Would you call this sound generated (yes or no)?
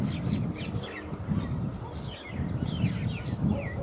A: no